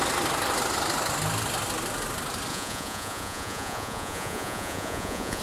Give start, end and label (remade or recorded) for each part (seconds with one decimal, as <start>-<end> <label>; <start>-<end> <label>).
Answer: 0.0-2.5 recorded; 2.5-5.4 remade